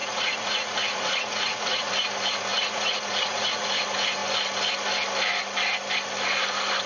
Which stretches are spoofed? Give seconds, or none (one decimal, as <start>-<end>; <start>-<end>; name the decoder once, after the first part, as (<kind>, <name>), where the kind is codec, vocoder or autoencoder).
0.0-1.9 (vocoder, Vocos); 2.5-3.7